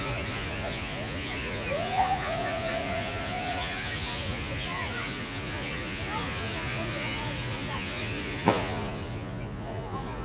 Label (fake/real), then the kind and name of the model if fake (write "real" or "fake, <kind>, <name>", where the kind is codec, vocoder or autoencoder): fake, vocoder, Vocos